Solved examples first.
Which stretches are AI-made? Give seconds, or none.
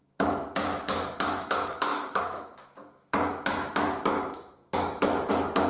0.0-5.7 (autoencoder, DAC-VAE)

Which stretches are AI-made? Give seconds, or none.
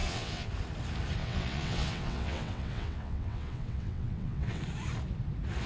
0.0-0.5 (vocoder, WaveNeXt); 1.2-4.6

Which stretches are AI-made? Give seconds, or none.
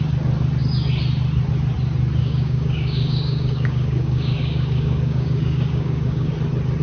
2.2-6.3 (codec, DAC)